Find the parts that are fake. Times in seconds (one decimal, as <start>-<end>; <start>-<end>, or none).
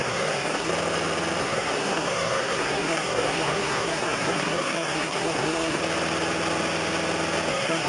0.0-0.7; 1.4-5.8; 7.5-7.9